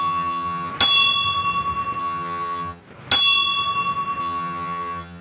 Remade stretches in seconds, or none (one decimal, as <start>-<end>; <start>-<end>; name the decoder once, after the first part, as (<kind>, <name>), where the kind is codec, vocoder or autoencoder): 0.0-0.7 (vocoder, HiFi-GAN); 2.0-2.8; 4.2-5.2